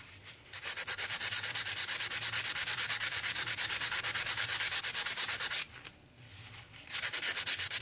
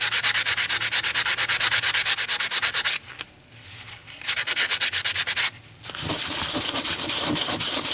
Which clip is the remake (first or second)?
first